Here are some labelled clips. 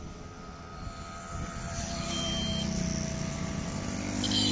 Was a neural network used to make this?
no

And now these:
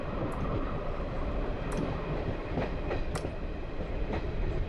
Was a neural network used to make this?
no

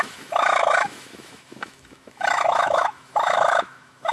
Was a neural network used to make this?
yes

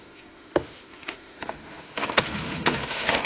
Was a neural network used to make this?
yes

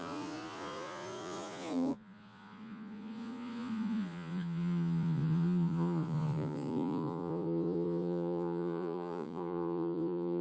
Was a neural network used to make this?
yes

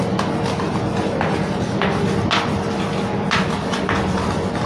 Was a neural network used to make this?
no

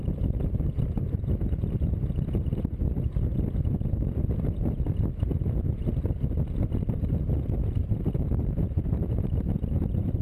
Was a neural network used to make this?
no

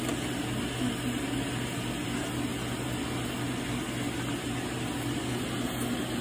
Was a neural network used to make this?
no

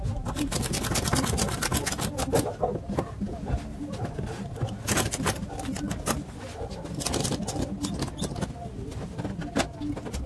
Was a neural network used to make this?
no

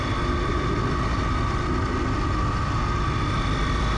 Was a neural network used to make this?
no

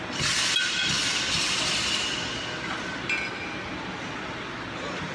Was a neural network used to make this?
no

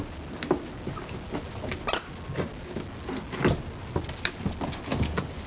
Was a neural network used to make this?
no